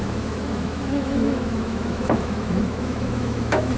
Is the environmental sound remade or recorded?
remade